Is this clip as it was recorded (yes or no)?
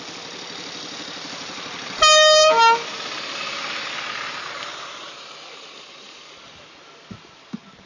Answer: yes